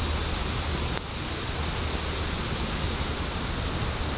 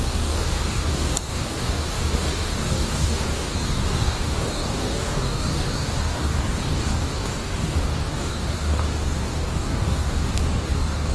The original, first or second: first